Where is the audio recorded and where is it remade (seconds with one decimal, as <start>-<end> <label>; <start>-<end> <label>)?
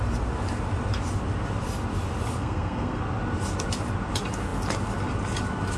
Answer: 0.0-2.4 recorded; 2.4-3.0 remade; 3.0-5.8 recorded